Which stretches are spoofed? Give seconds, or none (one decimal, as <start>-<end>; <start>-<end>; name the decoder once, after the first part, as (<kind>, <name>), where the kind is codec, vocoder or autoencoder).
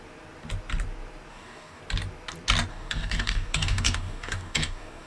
1.3-1.8 (codec, DAC); 2.7-5.1